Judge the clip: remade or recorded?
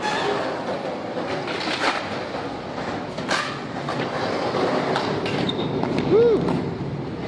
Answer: recorded